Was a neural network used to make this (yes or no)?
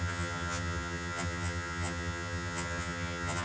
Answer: yes